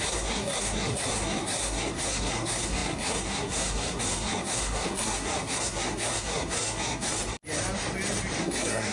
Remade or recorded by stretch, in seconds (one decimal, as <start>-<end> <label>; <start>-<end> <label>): 0.0-7.2 remade; 7.2-8.4 recorded; 8.4-8.9 remade